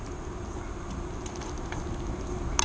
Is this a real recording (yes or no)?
yes